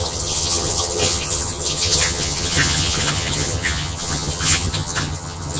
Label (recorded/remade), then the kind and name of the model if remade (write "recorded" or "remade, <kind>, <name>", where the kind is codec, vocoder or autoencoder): remade, vocoder, HiFi-GAN